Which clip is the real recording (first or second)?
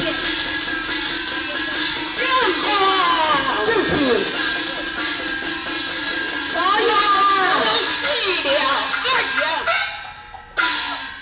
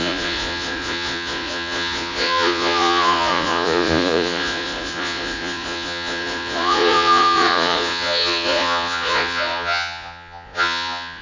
first